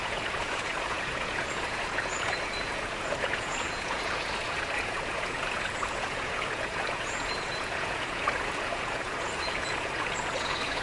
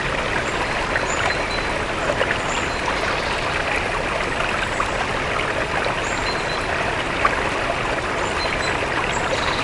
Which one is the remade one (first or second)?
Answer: first